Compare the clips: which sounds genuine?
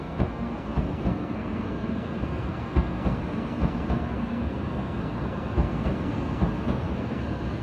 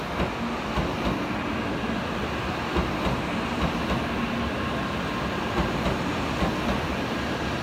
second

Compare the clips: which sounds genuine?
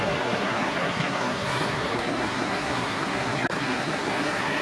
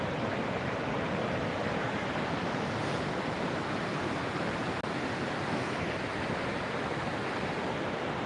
second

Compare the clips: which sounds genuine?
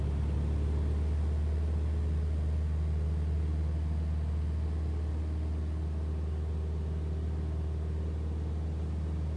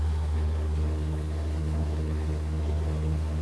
first